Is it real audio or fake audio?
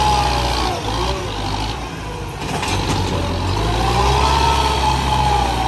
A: real